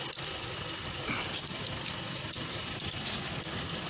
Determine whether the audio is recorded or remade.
recorded